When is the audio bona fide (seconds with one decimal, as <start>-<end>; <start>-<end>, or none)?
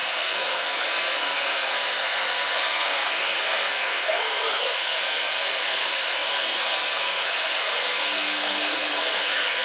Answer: none